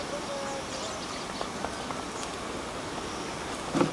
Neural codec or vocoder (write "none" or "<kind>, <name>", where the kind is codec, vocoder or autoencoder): none